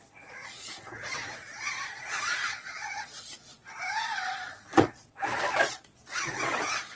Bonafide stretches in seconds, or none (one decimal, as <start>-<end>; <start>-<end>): none